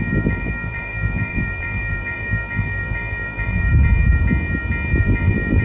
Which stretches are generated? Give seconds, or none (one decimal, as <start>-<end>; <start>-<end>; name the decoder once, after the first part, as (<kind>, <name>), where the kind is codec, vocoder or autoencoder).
0.0-3.7 (vocoder, BigVGAN v2); 5.0-5.6